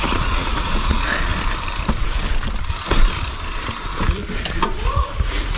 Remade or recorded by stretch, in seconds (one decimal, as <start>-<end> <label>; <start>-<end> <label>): 0.0-1.3 remade; 1.3-4.7 recorded; 4.7-5.6 remade